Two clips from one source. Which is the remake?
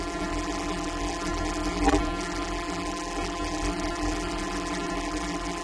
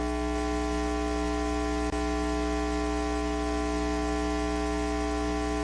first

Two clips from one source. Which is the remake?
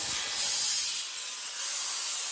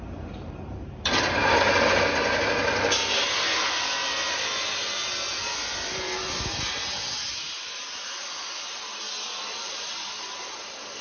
second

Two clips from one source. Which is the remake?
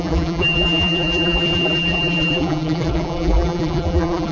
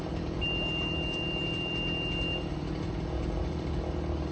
first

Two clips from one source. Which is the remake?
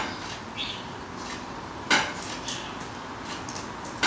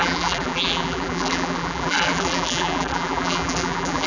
second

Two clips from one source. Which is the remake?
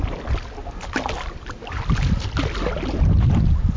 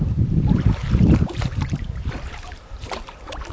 second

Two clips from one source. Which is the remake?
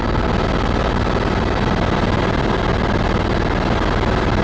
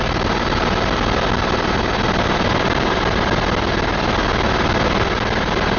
second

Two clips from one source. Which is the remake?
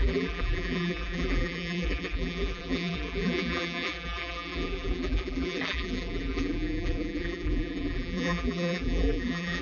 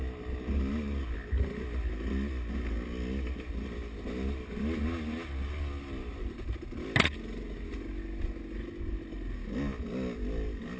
first